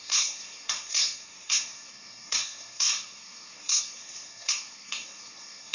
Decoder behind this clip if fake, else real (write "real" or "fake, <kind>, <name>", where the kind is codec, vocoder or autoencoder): fake, codec, SNAC